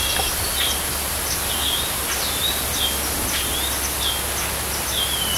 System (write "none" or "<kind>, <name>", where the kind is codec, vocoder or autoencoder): none